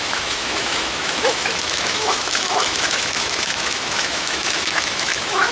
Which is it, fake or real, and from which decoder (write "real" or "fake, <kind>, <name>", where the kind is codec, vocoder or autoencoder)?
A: fake, autoencoder, DAC-VAE